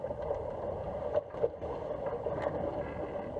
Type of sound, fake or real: real